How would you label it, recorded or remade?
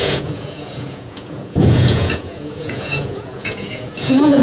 remade